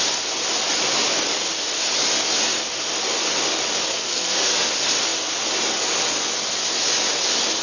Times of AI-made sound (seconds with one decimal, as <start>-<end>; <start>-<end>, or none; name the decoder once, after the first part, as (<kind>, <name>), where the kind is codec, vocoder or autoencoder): 3.9-4.5 (codec, SNAC)